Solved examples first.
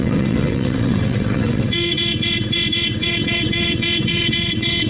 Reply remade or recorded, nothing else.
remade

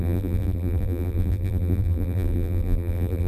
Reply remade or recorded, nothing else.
remade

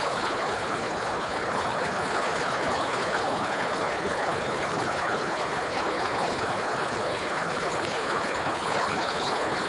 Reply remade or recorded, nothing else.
remade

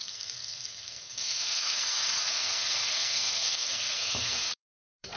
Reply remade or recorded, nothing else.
remade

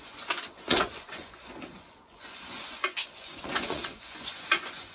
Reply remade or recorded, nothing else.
remade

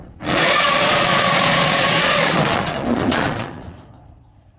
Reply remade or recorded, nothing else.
remade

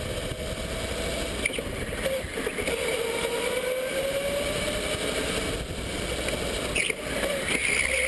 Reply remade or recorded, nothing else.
recorded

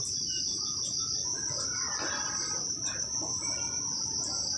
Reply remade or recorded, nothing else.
recorded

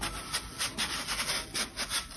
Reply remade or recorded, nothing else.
recorded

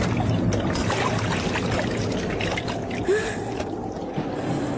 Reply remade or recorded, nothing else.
recorded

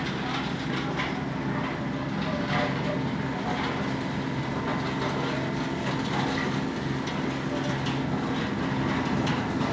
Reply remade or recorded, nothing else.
recorded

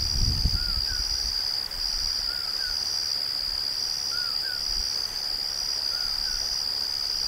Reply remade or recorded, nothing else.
recorded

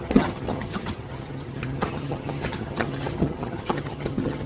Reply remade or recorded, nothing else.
remade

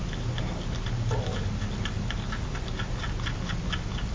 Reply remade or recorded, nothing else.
recorded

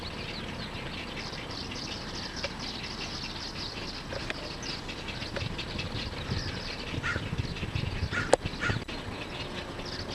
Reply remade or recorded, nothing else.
recorded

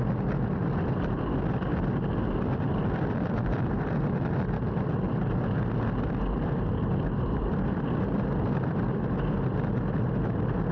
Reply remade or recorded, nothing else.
remade